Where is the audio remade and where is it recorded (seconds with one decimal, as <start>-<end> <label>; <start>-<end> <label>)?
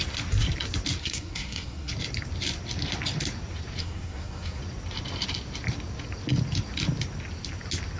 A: 0.0-1.0 recorded; 1.0-1.9 remade; 1.9-3.8 recorded; 3.8-4.6 remade; 4.6-8.0 recorded